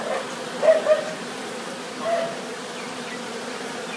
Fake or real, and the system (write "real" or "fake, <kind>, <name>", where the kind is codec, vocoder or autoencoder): real